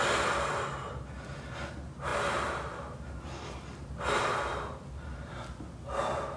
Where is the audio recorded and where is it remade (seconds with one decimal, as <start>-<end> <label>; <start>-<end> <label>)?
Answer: 0.0-6.4 recorded